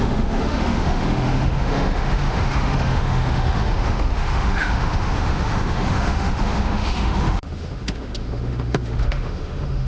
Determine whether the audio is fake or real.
fake